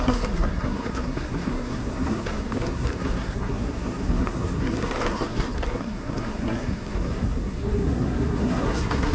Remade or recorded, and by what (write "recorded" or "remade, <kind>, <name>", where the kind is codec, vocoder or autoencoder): remade, codec, SNAC